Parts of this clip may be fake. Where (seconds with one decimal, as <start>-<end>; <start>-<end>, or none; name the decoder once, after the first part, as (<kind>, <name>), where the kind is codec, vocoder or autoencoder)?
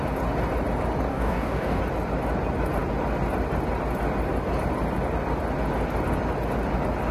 1.1-1.8 (codec, DAC)